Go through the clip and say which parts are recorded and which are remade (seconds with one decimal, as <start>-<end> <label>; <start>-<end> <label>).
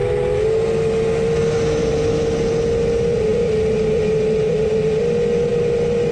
0.0-6.1 recorded